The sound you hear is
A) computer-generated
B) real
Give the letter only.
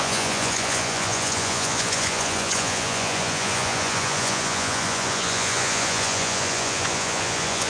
A